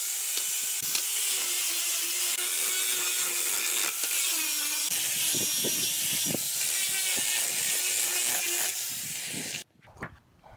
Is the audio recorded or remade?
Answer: recorded